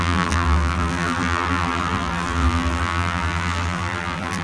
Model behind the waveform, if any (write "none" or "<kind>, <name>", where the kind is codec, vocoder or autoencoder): vocoder, BigVGAN v2